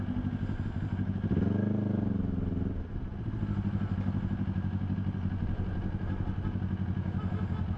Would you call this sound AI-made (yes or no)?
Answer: no